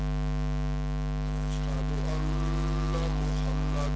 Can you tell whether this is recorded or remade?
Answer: recorded